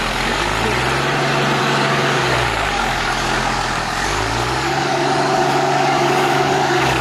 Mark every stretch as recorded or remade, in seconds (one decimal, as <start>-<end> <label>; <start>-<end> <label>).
0.0-0.5 remade; 0.5-1.6 recorded; 1.6-7.0 remade